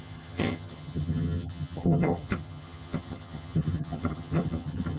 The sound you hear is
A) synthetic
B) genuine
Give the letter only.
A